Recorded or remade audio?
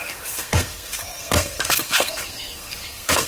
remade